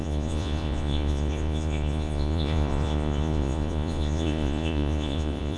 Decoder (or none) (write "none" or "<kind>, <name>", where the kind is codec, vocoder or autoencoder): vocoder, Vocos